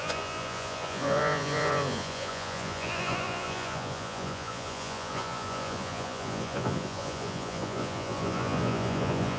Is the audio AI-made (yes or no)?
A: yes